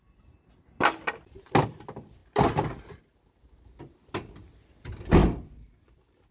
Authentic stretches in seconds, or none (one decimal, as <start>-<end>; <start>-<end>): 0.0-6.3